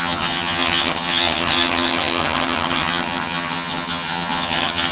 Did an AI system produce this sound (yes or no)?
yes